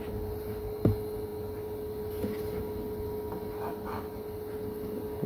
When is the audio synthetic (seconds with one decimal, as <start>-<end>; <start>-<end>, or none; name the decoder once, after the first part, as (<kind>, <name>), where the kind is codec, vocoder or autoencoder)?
none